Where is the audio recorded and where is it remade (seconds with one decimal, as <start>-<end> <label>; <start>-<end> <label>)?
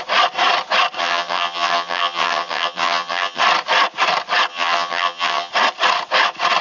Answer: 0.0-1.0 recorded; 1.0-3.4 remade; 3.4-4.5 recorded; 4.5-5.5 remade; 5.5-6.6 recorded